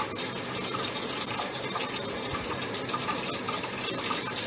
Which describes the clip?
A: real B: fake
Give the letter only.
A